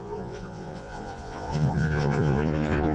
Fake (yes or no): yes